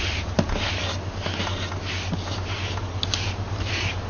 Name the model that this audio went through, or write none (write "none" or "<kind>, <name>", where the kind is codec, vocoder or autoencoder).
none